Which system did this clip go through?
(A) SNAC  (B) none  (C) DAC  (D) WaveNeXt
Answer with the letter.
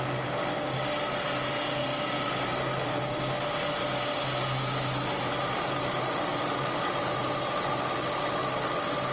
B